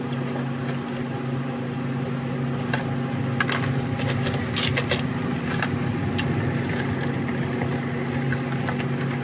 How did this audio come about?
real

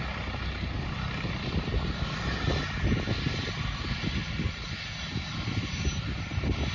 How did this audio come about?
real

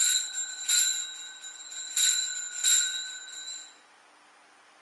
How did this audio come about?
real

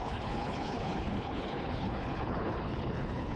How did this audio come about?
fake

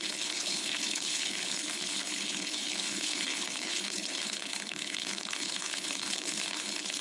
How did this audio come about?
fake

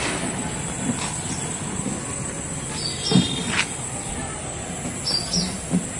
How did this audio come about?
real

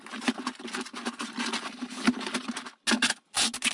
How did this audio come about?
real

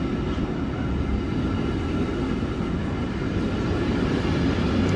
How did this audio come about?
real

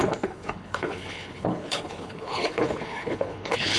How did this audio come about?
fake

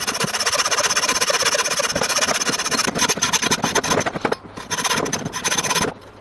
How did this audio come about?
real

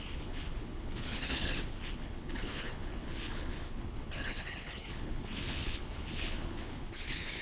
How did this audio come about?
fake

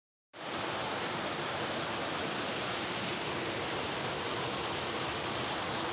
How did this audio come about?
real